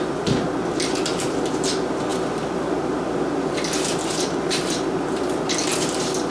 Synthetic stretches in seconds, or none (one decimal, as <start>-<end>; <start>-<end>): none